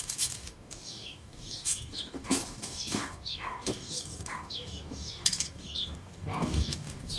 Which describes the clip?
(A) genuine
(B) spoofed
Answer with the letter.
B